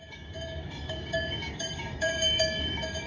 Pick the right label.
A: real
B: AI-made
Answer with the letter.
B